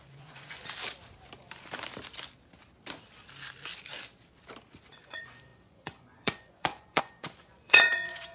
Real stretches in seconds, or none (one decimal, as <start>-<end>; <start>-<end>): 0.6-4.9